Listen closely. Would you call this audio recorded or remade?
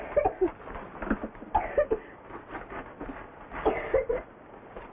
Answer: recorded